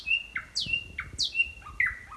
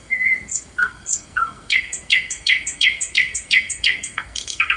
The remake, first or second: second